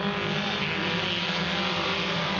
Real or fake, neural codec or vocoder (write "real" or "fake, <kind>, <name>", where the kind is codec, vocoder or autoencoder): real